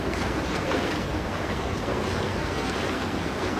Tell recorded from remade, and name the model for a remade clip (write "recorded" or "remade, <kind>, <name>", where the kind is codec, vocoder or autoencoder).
remade, codec, SNAC